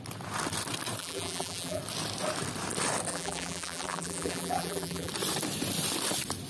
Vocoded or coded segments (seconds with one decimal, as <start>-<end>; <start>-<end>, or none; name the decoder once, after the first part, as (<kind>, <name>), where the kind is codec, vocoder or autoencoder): 1.0-1.8 (vocoder, BigVGAN v2); 3.1-5.1